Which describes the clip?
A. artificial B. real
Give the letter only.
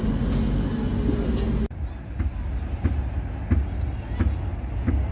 B